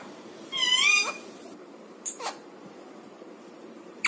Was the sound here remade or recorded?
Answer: remade